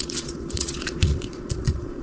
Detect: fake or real fake